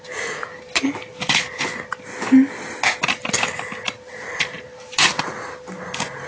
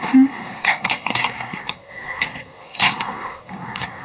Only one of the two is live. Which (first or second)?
first